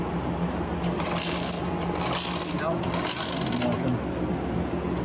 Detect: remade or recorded recorded